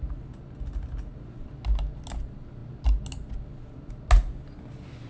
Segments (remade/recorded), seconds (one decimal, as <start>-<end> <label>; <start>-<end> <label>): 0.0-5.1 recorded